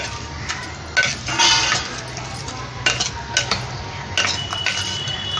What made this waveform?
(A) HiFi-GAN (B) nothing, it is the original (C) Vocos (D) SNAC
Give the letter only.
B